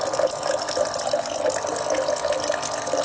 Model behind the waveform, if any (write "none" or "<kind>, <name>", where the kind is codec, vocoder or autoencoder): none